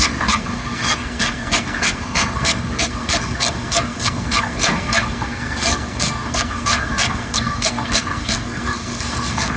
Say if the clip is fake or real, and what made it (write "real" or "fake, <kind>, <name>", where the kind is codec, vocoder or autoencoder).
fake, codec, SNAC